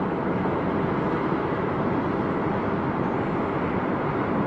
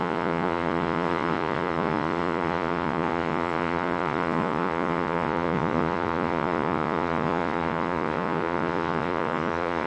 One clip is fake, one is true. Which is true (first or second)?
first